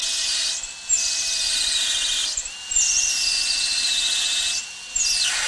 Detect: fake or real real